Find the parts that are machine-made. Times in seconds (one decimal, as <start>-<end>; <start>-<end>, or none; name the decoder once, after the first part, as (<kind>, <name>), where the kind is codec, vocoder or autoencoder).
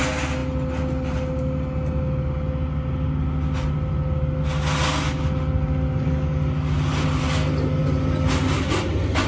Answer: none